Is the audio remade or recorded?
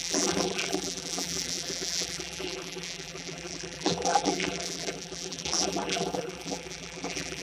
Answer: remade